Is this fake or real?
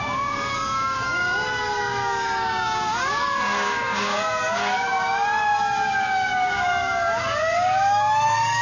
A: fake